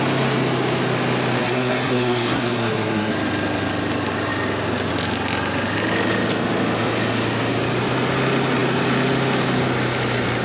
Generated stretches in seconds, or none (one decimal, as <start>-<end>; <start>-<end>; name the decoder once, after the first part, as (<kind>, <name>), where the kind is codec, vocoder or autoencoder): 1.4-3.1 (codec, SNAC)